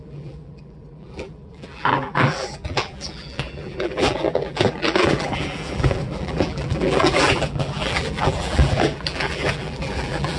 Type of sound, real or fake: fake